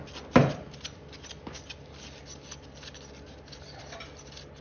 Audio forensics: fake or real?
real